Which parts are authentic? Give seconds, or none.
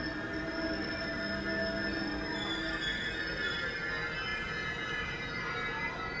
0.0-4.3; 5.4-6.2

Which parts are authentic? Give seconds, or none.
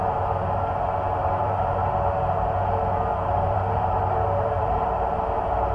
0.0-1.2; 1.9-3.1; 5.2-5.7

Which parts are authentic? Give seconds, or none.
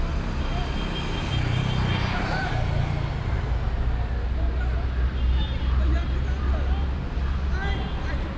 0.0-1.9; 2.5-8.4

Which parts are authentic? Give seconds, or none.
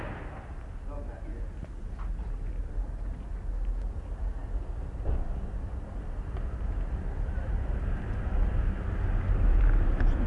0.0-10.3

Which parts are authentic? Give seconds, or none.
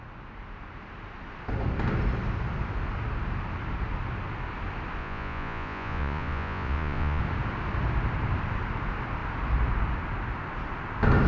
0.0-5.0; 7.2-11.3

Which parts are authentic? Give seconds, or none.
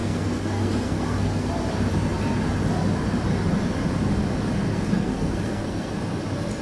1.5-4.7; 6.0-6.6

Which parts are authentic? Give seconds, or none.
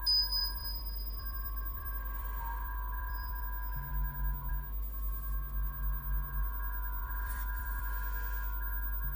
0.0-0.4; 3.4-7.0; 7.8-9.2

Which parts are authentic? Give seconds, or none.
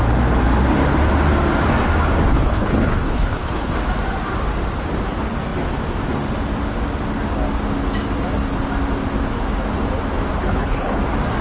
0.0-2.3; 3.7-10.4; 11.0-11.4